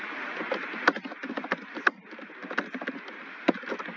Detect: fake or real real